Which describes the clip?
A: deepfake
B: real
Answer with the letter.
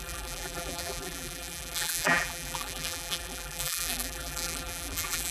A